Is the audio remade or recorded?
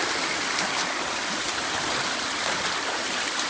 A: remade